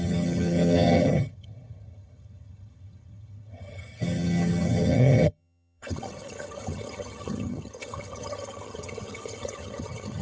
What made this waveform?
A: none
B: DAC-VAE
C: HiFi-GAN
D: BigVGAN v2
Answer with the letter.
C